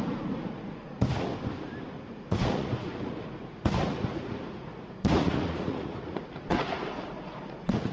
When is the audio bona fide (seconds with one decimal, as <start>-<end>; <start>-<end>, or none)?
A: 1.3-1.9